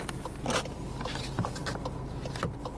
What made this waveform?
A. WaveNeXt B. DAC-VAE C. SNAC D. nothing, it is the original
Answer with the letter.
D